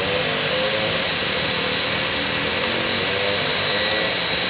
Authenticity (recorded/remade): recorded